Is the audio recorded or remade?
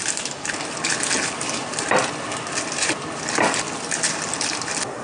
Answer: recorded